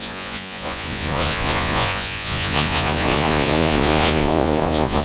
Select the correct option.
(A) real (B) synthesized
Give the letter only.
B